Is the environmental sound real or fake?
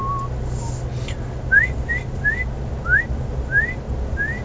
real